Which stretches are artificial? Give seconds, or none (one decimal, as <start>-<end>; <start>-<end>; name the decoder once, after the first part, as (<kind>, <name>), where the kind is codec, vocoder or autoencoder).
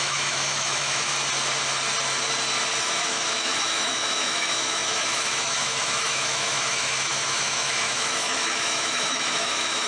0.0-1.1 (autoencoder, DAC-VAE); 2.8-9.9